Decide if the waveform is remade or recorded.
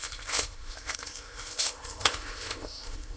remade